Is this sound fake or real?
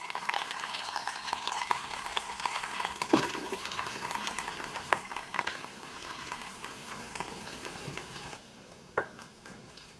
fake